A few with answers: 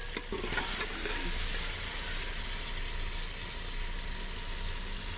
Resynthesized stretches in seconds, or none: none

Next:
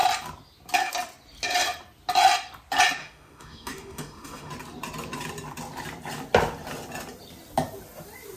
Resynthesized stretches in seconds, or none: 3.0-4.5 (autoencoder, DAC-VAE)

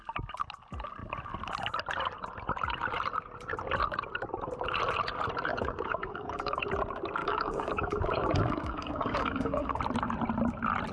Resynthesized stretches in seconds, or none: 5.5-6.6 (codec, DAC); 7.2-9.8

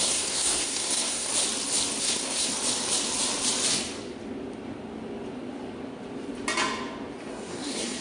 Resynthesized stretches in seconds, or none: 0.0-1.3 (codec, SNAC); 2.0-2.5; 7.3-8.0

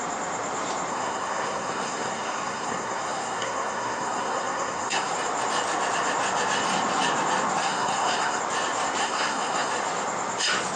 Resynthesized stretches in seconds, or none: 0.9-5.1 (codec, SNAC); 7.6-8.4; 9.0-9.7

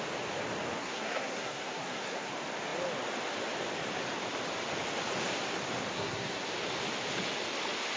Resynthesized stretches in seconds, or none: 0.8-2.3 (codec, SNAC); 5.9-6.5

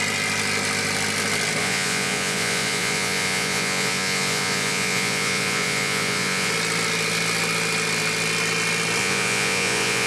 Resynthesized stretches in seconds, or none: 1.6-6.5 (vocoder, Vocos); 9.0-10.1

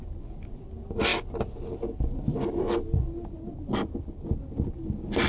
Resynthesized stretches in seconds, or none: none